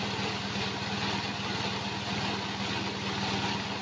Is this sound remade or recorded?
recorded